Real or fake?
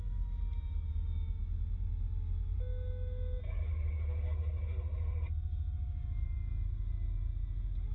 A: real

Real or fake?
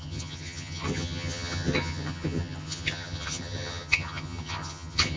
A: fake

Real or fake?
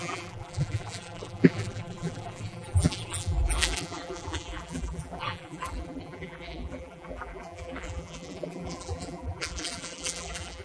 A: fake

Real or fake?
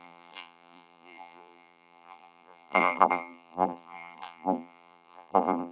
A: fake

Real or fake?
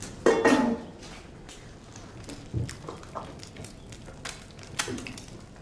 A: real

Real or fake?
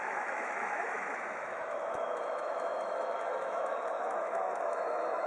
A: fake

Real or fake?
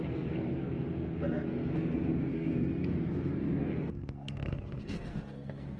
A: fake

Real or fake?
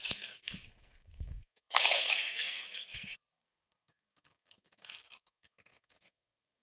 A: fake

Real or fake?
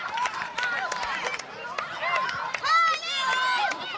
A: real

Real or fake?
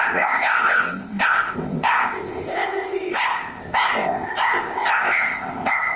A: fake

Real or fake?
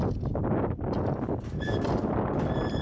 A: real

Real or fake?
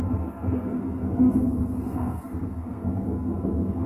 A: fake